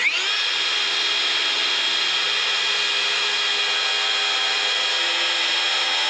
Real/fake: real